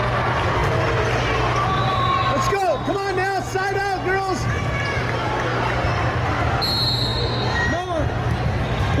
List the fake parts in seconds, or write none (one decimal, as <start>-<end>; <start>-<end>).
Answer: none